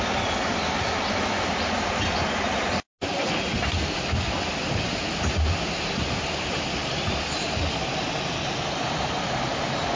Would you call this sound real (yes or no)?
yes